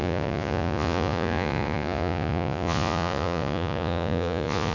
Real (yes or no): no